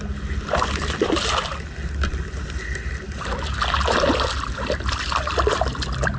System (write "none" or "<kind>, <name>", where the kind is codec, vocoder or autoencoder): none